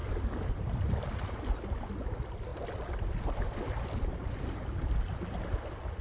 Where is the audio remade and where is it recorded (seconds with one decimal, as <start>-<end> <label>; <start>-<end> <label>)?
0.0-0.5 remade; 0.5-6.0 recorded